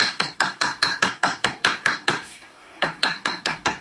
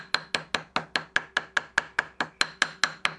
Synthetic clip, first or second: first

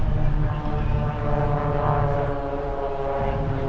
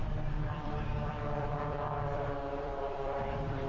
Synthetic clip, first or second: second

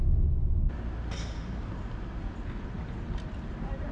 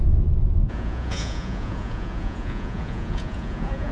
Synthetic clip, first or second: second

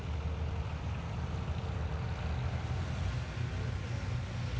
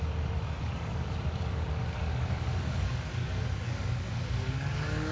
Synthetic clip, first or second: second